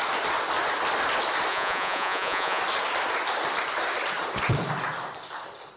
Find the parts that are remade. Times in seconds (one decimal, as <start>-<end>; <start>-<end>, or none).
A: 1.5-2.6